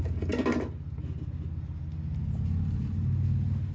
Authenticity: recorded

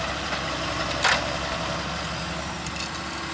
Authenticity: recorded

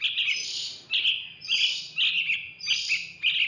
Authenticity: recorded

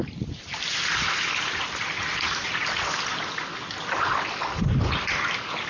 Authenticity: recorded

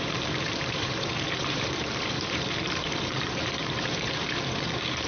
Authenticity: remade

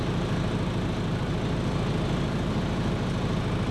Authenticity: recorded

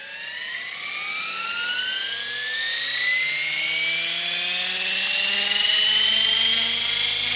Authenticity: recorded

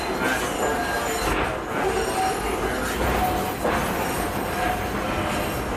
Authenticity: recorded